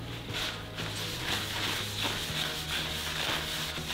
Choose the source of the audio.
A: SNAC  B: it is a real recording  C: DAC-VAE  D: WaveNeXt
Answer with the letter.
B